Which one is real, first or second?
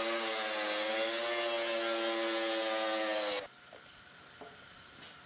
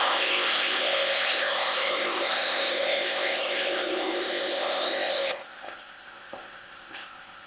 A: first